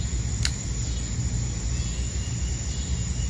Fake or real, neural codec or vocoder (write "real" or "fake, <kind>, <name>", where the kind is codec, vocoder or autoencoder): real